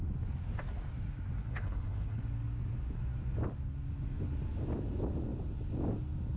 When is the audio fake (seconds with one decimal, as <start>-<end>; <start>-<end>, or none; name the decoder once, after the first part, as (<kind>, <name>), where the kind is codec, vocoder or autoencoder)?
1.4-2.2 (codec, HILCodec)